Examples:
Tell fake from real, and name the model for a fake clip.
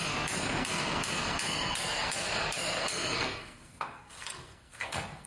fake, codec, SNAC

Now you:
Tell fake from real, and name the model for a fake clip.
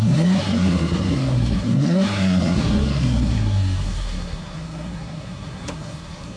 fake, codec, SNAC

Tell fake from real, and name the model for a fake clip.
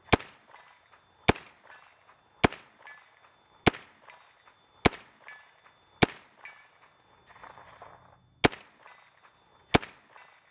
real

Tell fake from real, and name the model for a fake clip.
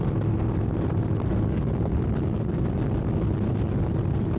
real